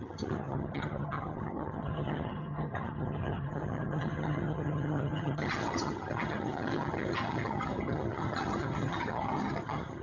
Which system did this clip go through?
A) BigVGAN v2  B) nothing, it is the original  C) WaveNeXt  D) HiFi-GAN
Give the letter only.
D